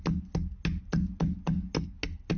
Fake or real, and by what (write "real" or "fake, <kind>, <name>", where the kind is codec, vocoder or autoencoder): real